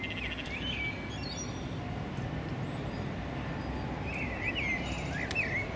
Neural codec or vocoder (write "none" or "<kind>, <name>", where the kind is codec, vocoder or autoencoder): none